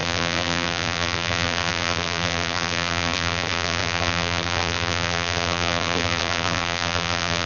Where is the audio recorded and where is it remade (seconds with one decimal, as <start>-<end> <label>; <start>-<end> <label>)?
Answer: 0.0-7.5 remade